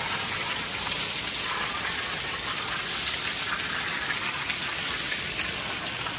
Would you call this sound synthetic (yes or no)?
no